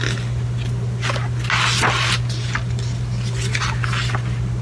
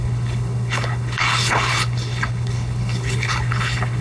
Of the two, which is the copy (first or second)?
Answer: second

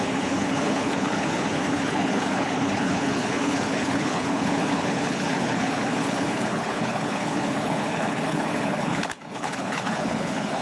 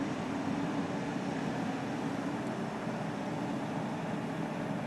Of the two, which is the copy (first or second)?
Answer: first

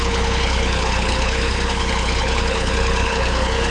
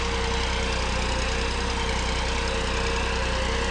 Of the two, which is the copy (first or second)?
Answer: first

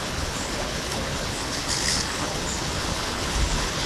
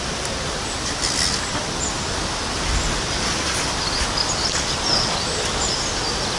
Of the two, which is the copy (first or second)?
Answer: first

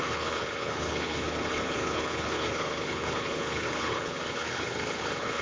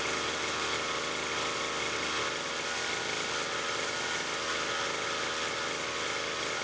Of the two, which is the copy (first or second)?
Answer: first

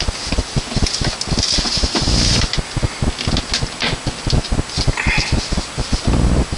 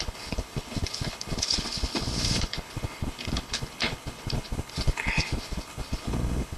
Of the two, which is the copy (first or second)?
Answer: second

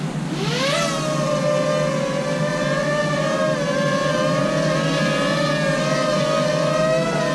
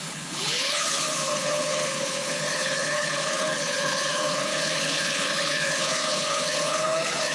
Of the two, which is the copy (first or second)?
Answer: second